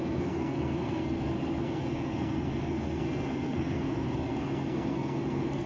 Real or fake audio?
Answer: fake